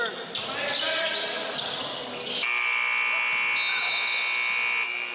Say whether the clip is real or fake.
real